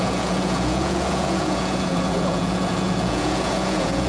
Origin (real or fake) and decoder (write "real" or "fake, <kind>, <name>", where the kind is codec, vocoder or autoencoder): fake, vocoder, Vocos